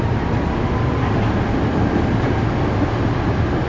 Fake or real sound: real